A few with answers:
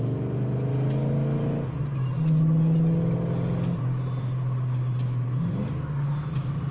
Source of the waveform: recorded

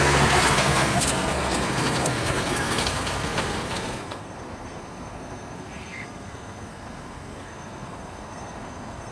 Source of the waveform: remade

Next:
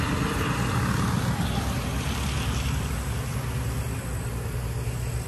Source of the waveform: recorded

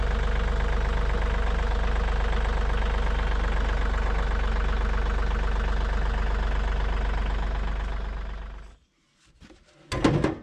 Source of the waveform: recorded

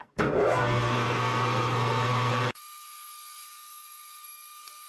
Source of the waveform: remade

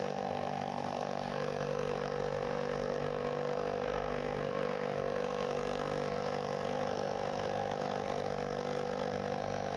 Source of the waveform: remade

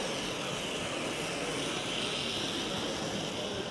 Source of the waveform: recorded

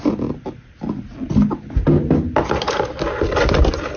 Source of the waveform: recorded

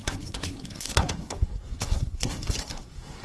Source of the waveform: remade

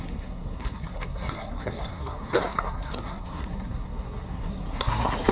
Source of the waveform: remade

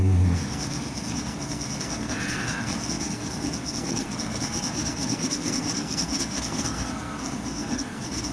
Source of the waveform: remade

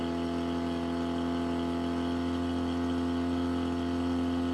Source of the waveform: recorded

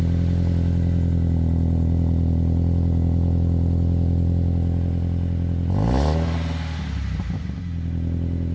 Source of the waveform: recorded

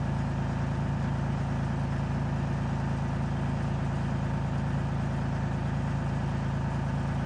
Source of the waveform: recorded